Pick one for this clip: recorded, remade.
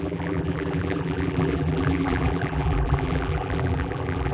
remade